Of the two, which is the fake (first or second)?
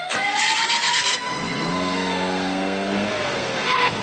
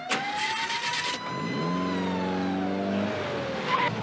first